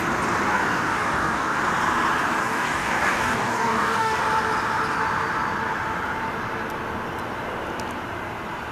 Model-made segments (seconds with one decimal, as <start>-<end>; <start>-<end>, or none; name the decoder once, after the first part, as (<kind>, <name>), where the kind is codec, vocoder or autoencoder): 0.5-1.6 (codec, DAC); 2.4-4.2